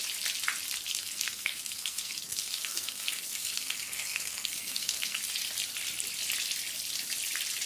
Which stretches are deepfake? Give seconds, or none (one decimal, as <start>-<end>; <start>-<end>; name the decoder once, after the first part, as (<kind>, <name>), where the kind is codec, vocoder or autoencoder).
0.9-5.2 (codec, SNAC)